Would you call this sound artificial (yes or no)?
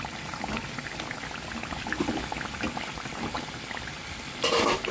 no